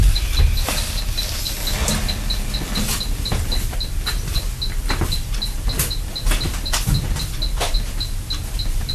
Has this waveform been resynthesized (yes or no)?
no